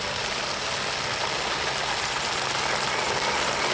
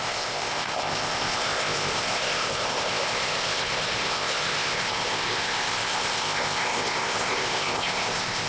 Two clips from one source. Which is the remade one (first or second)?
second